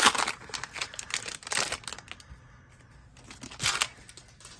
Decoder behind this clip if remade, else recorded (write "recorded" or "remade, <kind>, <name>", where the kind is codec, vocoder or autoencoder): recorded